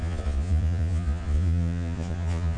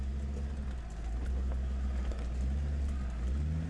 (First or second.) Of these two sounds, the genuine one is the second